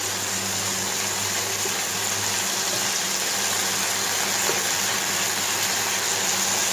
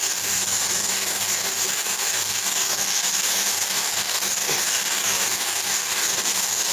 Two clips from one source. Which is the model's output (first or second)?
second